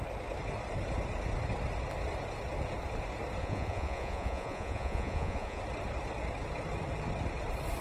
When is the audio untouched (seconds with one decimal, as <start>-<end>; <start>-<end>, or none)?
0.0-3.4; 5.6-7.8